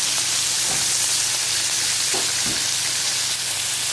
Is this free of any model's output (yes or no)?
yes